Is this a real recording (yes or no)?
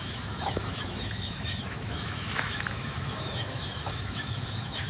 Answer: no